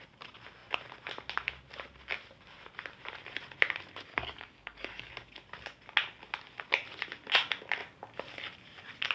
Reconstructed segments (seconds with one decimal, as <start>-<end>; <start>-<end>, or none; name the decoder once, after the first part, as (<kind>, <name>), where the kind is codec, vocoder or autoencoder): 4.1-5.1 (codec, DAC)